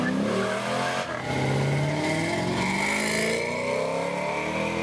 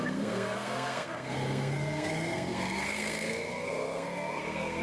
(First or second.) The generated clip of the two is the second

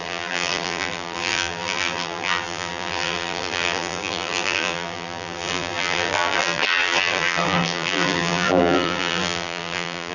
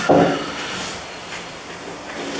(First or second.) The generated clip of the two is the first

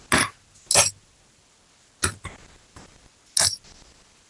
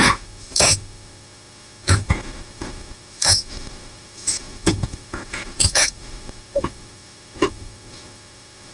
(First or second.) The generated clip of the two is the second